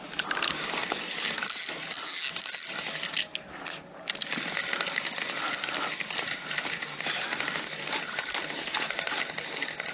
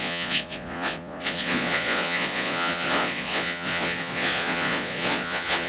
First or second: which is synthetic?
second